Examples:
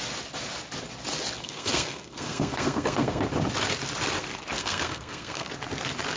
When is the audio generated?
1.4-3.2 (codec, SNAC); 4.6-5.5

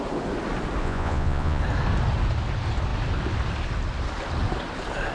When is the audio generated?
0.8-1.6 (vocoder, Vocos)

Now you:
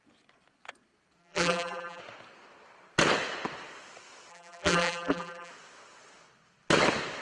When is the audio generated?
1.2-2.0 (vocoder, BigVGAN v2); 4.3-5.5